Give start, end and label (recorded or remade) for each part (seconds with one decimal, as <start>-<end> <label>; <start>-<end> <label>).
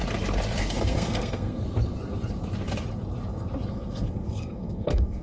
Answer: 0.0-0.6 recorded; 0.6-1.6 remade; 1.6-3.7 recorded; 3.7-5.2 remade